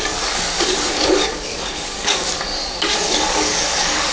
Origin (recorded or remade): remade